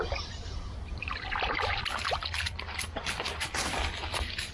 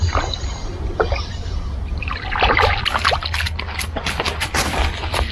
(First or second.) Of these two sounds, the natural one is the second